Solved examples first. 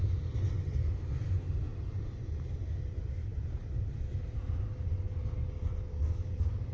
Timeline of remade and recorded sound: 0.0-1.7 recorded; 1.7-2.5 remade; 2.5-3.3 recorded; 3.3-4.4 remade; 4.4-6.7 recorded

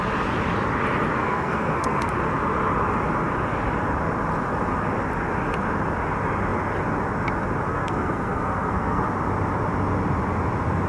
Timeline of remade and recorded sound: 0.0-1.2 recorded; 1.2-2.1 remade; 2.1-7.7 recorded; 7.7-9.0 remade; 9.0-10.9 recorded

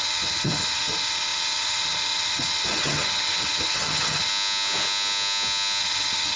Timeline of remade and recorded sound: 0.0-4.3 remade; 4.3-5.8 recorded; 5.8-6.4 remade

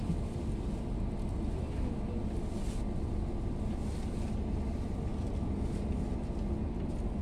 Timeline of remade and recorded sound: 0.0-7.2 recorded